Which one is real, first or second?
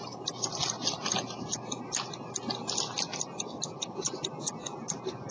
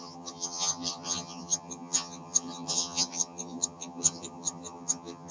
first